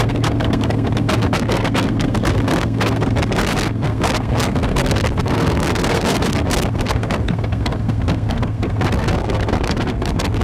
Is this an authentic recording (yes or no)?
no